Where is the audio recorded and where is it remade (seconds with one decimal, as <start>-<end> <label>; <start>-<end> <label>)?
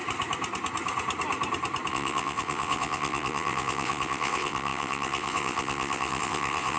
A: 0.0-1.9 recorded; 1.9-6.8 remade